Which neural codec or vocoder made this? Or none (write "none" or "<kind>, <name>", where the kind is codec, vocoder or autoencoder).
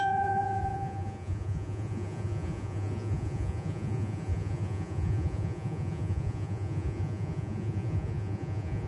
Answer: vocoder, Vocos